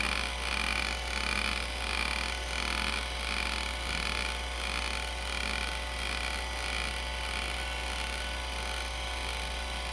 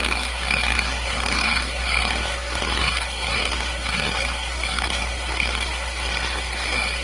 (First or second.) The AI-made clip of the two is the second